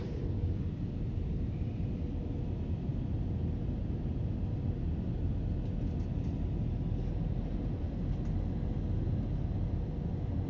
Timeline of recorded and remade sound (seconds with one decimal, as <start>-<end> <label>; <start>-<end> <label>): 0.0-10.5 recorded